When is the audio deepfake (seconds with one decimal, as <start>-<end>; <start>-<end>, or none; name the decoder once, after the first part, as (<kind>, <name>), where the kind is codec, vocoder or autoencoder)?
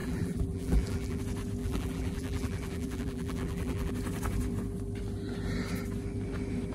0.0-1.2 (vocoder, BigVGAN v2); 1.6-3.9